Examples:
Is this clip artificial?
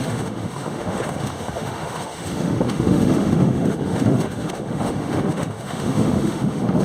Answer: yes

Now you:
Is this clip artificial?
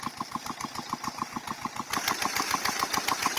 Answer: no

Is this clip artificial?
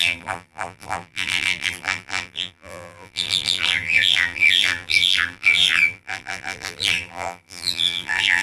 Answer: yes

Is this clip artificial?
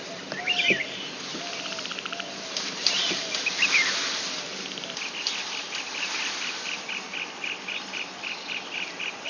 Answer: no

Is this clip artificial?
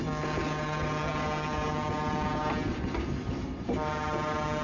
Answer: no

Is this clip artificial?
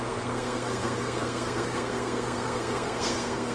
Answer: yes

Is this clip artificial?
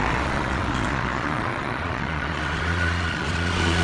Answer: yes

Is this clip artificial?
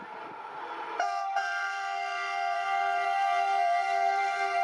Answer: yes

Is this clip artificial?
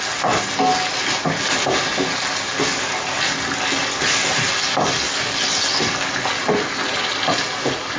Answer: no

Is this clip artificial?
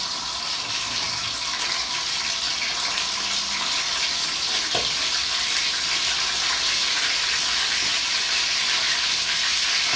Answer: no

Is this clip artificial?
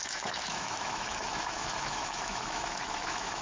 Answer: yes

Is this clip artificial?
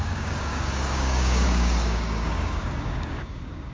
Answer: yes